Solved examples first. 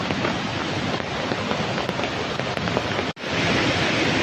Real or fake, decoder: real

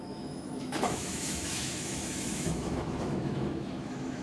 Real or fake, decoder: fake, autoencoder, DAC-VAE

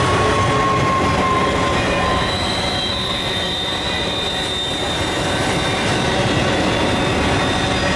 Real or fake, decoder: real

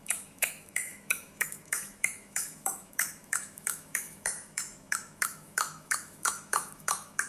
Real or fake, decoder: fake, autoencoder, DAC-VAE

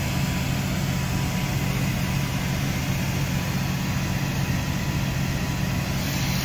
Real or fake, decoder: real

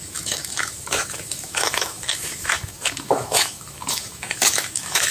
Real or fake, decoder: fake, autoencoder, DAC-VAE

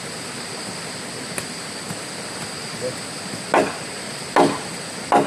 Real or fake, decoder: real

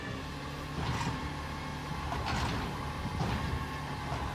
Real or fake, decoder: real